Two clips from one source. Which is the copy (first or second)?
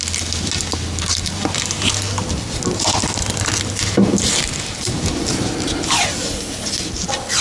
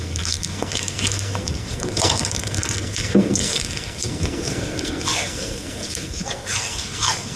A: second